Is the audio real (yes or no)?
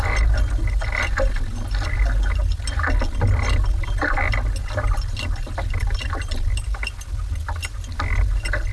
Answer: yes